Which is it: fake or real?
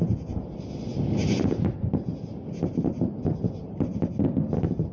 real